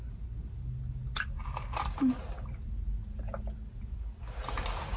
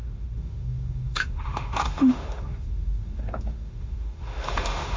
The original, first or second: first